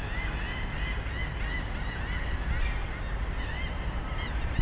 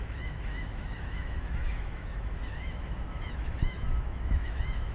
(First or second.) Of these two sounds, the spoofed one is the second